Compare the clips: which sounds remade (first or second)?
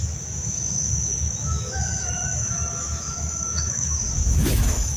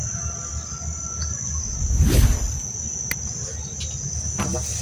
first